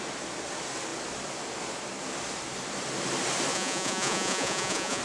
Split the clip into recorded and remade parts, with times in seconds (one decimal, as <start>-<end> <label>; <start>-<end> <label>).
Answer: 0.0-3.5 recorded; 3.5-5.0 remade